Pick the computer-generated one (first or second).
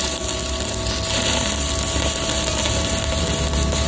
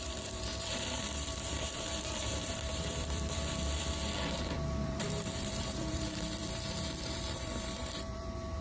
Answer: second